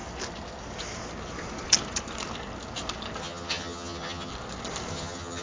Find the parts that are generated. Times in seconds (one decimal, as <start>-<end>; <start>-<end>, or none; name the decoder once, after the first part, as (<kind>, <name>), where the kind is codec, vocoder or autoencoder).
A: 3.2-4.3 (vocoder, HiFi-GAN); 4.9-5.4